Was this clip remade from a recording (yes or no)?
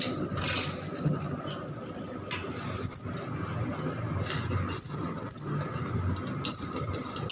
no